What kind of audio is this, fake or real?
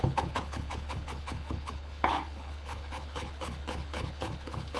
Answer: fake